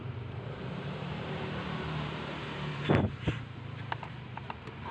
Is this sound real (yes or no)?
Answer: no